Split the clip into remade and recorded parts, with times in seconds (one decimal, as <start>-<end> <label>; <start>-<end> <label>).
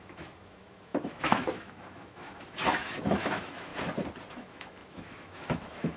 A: 0.0-3.7 remade; 3.7-4.3 recorded; 4.3-6.0 remade